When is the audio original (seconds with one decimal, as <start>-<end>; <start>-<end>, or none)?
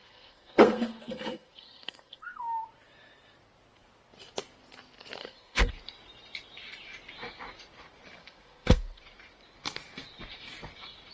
2.4-5.2; 5.7-8.2; 9.0-11.1